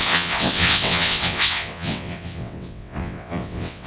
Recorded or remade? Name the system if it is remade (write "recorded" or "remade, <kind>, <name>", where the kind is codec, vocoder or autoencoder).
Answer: remade, vocoder, WaveNeXt